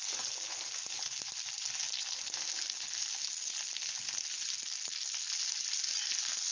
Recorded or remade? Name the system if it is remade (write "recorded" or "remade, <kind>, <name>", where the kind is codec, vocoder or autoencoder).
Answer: recorded